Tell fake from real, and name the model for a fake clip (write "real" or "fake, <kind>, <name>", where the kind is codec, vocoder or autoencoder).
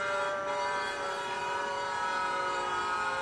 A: fake, vocoder, BigVGAN v2